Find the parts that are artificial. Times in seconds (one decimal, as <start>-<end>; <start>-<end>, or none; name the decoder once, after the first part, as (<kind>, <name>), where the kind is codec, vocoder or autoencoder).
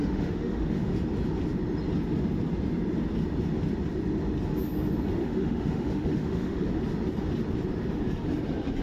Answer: 0.0-0.9 (autoencoder, DAC-VAE); 5.2-6.7